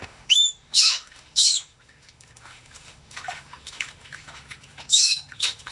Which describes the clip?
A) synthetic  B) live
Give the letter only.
A